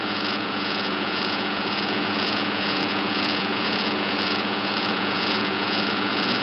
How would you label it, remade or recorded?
remade